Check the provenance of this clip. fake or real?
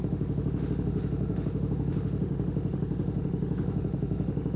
fake